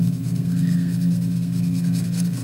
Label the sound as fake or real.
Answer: fake